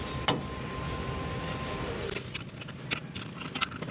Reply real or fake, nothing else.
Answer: real